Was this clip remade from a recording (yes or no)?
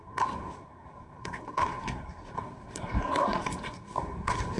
yes